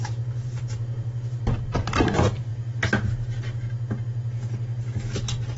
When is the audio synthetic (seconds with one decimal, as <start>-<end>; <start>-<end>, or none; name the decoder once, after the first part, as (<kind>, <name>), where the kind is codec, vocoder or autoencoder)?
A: 0.0-2.5 (vocoder, BigVGAN v2)